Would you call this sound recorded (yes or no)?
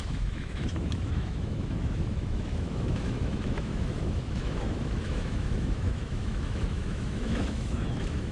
no